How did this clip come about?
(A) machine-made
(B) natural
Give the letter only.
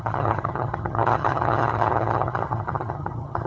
A